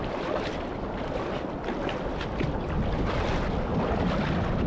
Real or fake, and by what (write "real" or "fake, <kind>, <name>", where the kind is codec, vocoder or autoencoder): real